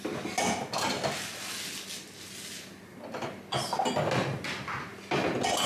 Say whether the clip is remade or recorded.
recorded